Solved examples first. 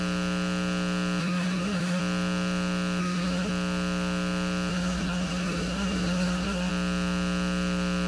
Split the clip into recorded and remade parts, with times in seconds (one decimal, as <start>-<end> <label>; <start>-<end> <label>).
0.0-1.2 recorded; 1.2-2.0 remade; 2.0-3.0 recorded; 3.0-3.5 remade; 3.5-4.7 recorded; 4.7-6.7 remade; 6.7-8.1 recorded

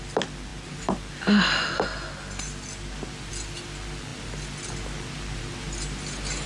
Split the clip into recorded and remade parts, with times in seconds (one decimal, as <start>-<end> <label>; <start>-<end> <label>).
0.0-6.5 recorded

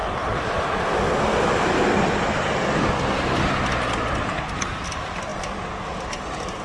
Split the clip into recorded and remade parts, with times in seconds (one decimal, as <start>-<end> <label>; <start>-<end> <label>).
0.0-6.6 recorded

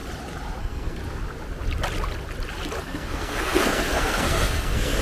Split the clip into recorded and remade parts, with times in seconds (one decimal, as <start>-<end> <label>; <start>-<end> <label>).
0.0-0.6 recorded; 0.6-1.0 remade; 1.0-2.8 recorded; 2.8-5.0 remade

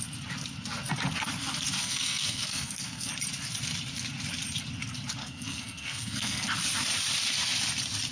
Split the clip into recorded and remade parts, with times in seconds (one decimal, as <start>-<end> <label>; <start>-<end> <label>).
0.0-1.8 recorded; 1.8-3.1 remade; 3.1-5.2 recorded; 5.2-6.5 remade; 6.5-8.1 recorded

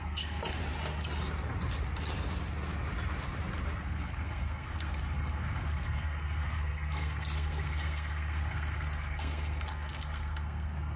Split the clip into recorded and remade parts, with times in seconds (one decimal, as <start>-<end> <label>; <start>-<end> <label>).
0.0-0.6 remade; 0.6-3.8 recorded; 3.8-11.0 remade